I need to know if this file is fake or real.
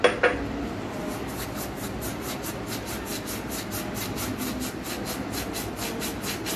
real